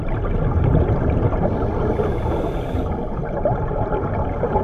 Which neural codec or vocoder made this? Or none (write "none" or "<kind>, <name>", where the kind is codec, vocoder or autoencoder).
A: none